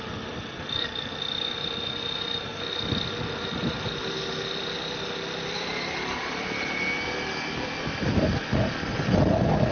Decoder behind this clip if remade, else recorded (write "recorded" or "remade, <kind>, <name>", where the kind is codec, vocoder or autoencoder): recorded